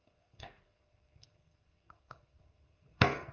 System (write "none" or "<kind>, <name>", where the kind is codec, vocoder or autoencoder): codec, SNAC